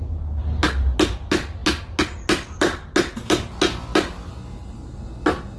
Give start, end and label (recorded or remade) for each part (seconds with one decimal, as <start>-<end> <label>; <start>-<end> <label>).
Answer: 0.0-5.6 recorded